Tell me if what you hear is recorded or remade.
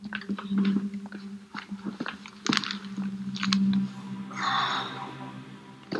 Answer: recorded